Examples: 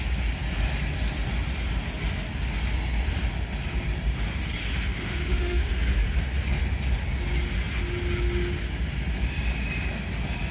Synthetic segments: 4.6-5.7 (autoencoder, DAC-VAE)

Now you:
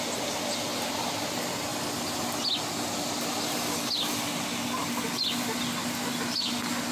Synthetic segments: 0.7-1.2 (vocoder, BigVGAN v2)

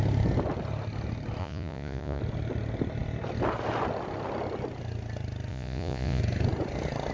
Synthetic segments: 1.4-2.2 (vocoder, Vocos); 5.5-6.2

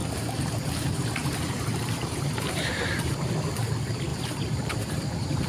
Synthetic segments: 0.0-3.3 (vocoder, BigVGAN v2); 4.1-5.5

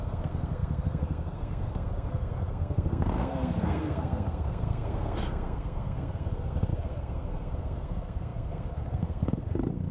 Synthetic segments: 0.0-9.9 (codec, SNAC)

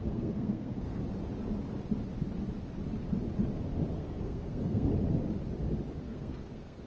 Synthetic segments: 0.0-1.0 (codec, SNAC); 3.9-4.9; 6.0-6.9

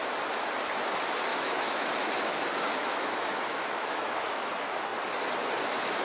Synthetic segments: 1.3-2.1 (autoencoder, DAC-VAE); 2.8-4.5